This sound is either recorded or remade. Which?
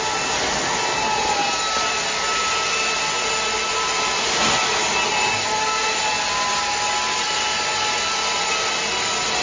recorded